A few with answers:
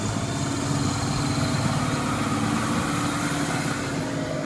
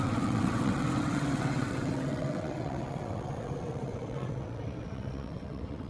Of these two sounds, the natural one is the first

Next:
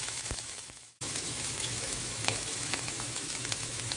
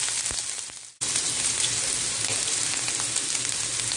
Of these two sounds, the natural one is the second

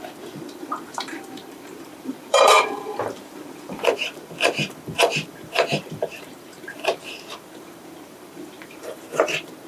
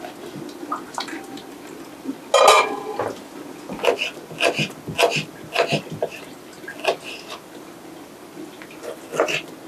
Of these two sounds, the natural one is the second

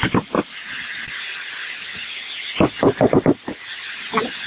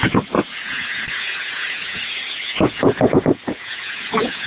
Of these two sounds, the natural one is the first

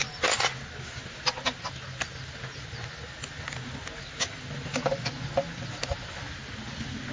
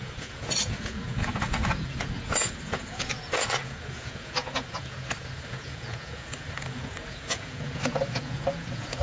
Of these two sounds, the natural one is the first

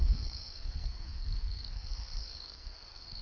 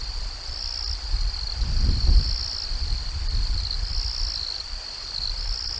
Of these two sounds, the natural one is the second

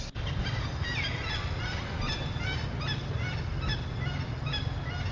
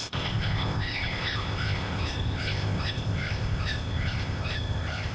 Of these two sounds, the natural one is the first